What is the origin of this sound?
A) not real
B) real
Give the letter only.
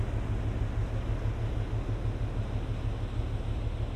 B